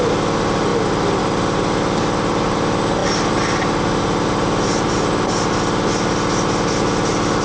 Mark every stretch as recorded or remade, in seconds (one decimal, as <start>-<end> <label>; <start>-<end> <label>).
0.0-7.4 recorded